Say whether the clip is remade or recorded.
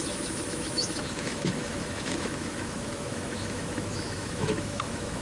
remade